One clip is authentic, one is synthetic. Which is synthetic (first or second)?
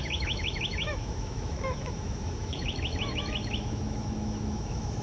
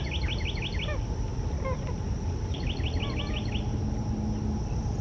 first